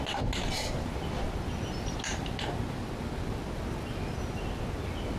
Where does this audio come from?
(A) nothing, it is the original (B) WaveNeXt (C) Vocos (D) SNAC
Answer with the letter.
A